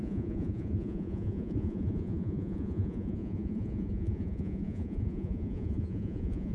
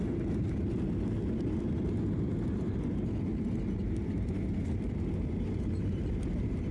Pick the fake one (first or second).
first